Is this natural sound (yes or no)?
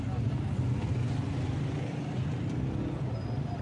yes